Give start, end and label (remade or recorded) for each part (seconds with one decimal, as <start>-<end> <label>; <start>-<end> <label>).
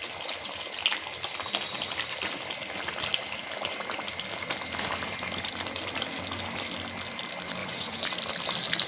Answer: 0.0-7.6 recorded; 7.6-8.1 remade; 8.1-8.9 recorded